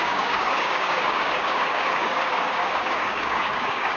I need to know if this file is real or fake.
fake